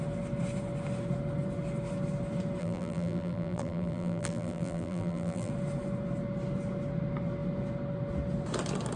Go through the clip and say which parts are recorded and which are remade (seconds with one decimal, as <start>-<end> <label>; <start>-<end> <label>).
0.0-2.6 recorded; 2.6-5.5 remade; 5.5-9.0 recorded